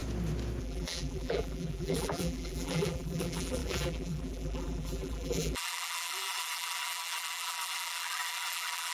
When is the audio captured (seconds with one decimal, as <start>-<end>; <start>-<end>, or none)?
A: 0.0-0.6